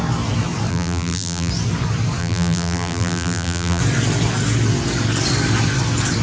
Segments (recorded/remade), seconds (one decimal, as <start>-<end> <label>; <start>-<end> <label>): 0.0-0.7 recorded; 0.7-1.5 remade; 1.5-2.2 recorded; 2.2-3.8 remade; 3.8-6.2 recorded